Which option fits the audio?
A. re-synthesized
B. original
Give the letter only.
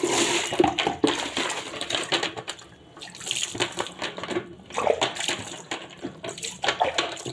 B